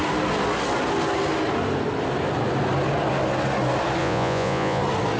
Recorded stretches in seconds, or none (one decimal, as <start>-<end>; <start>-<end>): 0.0-4.0; 4.8-5.2